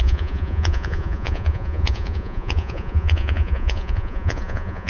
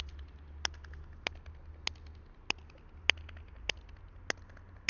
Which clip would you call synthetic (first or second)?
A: first